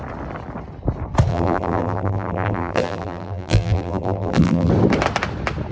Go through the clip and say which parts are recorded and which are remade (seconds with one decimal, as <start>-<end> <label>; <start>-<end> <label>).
0.0-1.3 recorded; 1.3-4.7 remade; 4.7-5.7 recorded

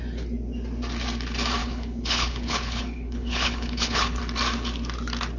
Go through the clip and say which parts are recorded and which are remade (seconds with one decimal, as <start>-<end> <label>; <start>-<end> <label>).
0.0-1.6 recorded; 1.6-4.2 remade; 4.2-5.4 recorded

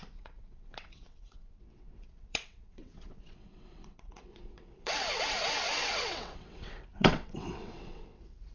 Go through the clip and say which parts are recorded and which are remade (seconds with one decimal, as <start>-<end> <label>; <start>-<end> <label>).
0.0-8.5 remade

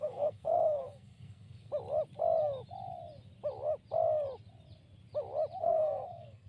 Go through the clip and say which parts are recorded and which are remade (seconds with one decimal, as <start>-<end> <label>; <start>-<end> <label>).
0.0-1.7 remade; 1.7-5.6 recorded; 5.6-6.5 remade

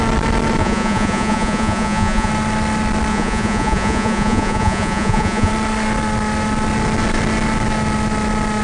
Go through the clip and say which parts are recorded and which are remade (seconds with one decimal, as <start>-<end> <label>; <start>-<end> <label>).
0.0-0.6 recorded; 0.6-2.3 remade; 2.3-3.1 recorded; 3.1-5.5 remade; 5.5-8.6 recorded